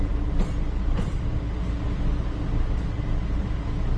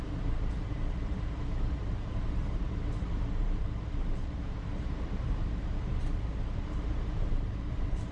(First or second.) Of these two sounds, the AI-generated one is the second